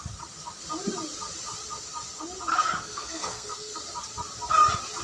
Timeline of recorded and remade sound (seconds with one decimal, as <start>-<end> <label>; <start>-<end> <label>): 0.0-2.5 recorded; 2.5-3.8 remade; 3.8-5.0 recorded